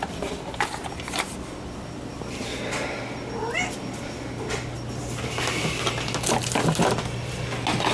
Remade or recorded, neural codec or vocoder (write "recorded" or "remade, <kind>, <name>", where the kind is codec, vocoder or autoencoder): recorded